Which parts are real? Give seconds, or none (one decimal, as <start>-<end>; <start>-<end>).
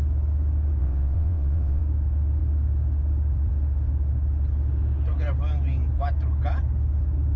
0.0-0.8; 1.8-7.4